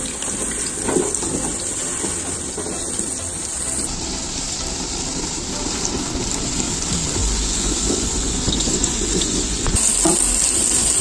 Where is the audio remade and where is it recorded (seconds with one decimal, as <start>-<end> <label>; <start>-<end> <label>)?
0.0-7.2 recorded; 7.2-9.8 remade; 9.8-11.0 recorded